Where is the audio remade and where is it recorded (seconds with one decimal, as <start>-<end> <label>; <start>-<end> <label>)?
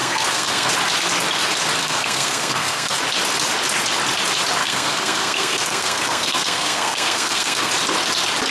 0.0-0.7 remade; 0.7-1.8 recorded; 1.8-3.0 remade; 3.0-4.6 recorded; 4.6-7.7 remade; 7.7-8.5 recorded